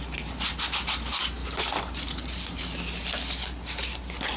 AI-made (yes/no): no